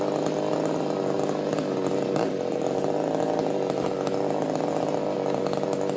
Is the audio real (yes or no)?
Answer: yes